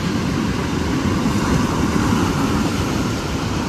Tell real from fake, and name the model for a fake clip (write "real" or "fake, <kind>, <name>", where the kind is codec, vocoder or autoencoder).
fake, vocoder, BigVGAN v2